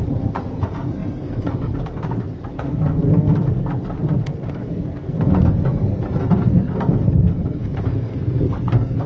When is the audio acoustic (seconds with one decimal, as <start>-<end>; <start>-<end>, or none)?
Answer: none